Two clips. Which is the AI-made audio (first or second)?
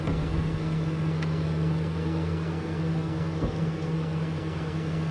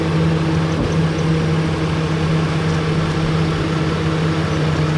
first